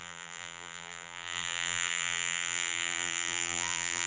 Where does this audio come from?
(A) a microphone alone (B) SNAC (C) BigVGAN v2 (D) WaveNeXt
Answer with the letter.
C